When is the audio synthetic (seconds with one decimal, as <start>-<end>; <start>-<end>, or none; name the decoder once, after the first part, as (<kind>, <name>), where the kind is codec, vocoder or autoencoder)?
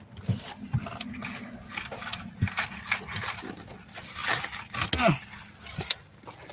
none